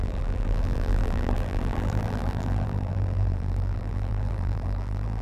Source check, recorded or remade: remade